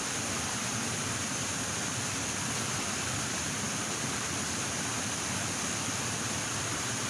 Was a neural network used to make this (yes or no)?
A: yes